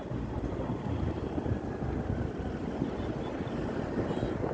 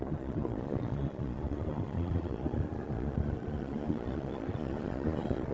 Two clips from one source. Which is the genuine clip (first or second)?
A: first